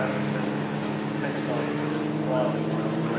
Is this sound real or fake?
real